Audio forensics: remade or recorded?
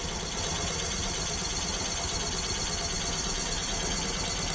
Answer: recorded